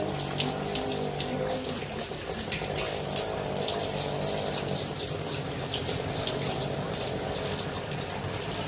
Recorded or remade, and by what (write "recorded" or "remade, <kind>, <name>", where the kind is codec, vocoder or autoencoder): recorded